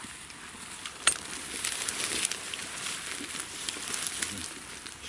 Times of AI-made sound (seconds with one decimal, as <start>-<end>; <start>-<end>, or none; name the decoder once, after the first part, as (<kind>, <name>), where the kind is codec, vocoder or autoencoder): none